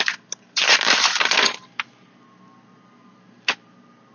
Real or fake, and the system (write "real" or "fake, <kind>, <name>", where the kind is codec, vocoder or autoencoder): real